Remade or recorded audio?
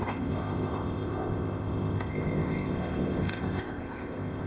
remade